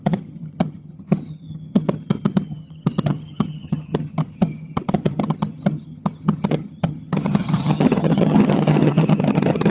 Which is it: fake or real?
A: fake